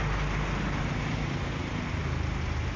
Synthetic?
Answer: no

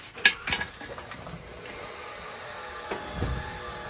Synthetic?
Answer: no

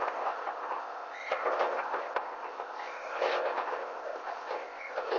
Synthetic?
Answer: yes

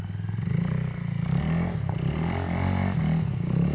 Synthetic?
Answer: no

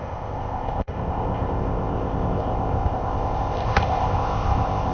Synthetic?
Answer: yes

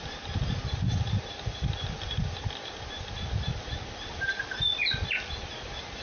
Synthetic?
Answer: no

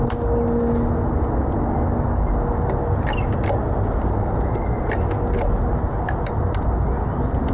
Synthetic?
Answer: no